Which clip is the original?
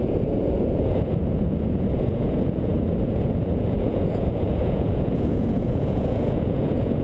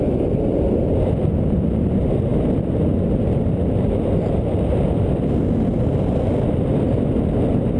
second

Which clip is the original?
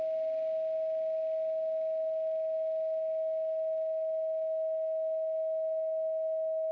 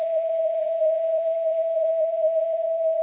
first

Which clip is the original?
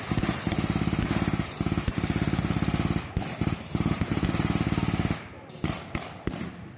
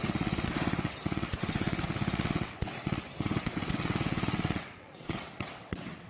first